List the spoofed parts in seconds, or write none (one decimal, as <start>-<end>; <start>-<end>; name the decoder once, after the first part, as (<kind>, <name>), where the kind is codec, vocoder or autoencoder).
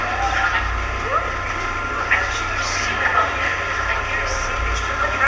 none